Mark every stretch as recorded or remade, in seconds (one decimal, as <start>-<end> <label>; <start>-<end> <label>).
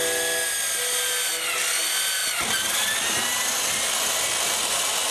0.0-5.1 recorded